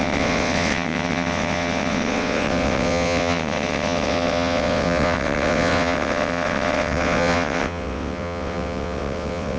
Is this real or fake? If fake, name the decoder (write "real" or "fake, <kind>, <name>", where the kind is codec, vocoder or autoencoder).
fake, vocoder, WaveNeXt